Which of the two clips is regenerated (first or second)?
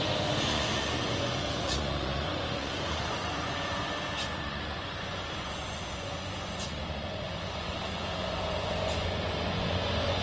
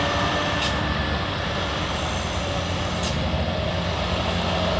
first